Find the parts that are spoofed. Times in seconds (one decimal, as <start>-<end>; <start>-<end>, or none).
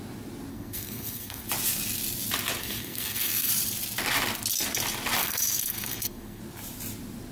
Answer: 0.5-1.5; 2.6-3.5; 5.2-6.4